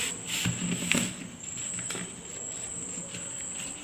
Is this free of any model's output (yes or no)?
yes